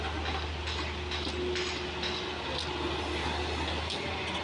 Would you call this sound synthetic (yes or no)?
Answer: no